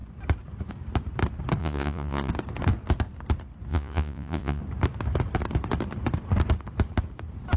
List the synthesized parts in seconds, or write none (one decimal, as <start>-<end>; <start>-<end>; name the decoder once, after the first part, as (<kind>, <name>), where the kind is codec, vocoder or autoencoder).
1.6-2.3 (vocoder, Vocos); 3.7-4.6